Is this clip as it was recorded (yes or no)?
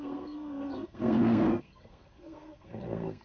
no